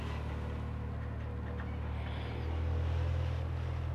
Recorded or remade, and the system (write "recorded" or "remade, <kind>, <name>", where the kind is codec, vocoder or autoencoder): recorded